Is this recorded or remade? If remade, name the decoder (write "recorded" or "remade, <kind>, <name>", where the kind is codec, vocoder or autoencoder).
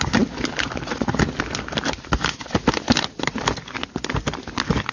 recorded